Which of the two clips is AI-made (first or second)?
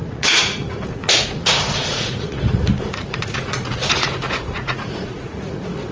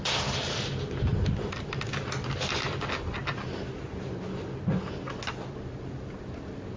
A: first